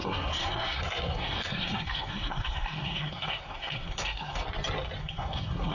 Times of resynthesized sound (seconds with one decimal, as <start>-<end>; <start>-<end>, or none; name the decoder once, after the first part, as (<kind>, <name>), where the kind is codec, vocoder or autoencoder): 0.0-4.4 (codec, SNAC); 5.0-5.7